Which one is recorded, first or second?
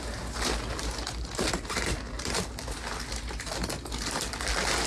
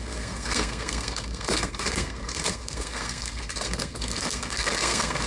first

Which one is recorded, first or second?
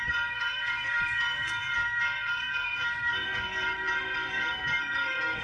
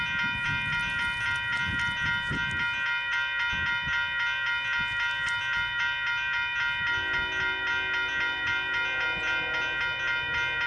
second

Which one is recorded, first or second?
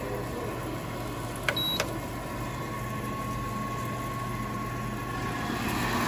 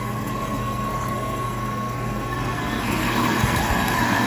first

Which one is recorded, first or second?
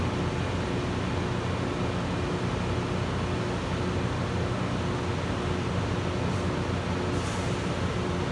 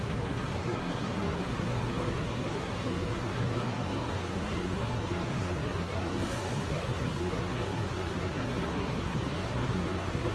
first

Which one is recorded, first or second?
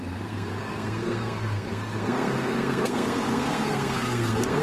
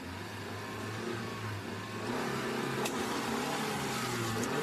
second